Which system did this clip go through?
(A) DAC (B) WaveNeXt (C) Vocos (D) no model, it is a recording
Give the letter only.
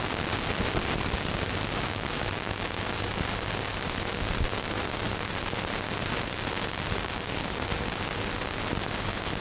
D